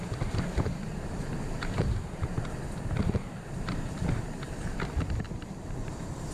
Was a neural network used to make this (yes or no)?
no